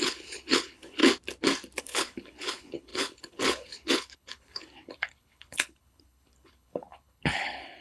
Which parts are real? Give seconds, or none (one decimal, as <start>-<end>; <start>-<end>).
1.0-1.8